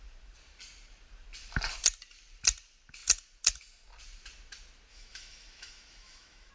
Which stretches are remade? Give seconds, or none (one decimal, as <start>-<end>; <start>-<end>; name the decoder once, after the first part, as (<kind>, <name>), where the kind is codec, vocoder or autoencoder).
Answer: 4.9-6.5 (autoencoder, DAC-VAE)